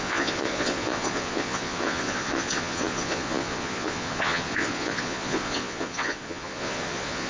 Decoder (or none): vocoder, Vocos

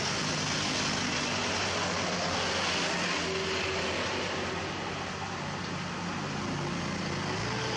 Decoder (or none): none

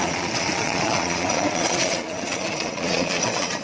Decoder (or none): vocoder, Vocos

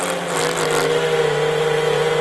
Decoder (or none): none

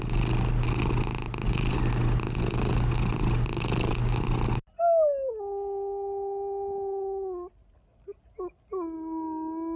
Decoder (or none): none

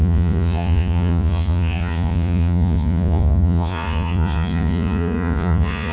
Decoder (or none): vocoder, Vocos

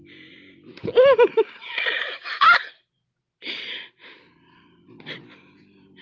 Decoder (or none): none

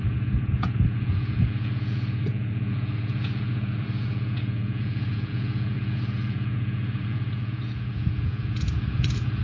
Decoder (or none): vocoder, Vocos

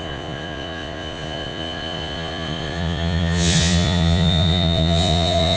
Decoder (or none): vocoder, Vocos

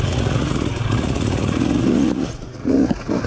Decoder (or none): vocoder, Vocos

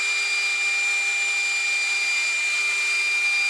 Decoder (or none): none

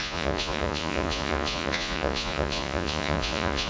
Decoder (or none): vocoder, Vocos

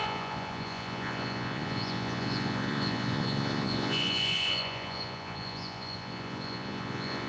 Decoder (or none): vocoder, Vocos